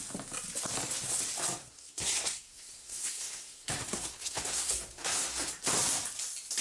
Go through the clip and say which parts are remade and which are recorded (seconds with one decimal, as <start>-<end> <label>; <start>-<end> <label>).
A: 0.0-1.6 recorded; 1.6-5.5 remade; 5.5-6.6 recorded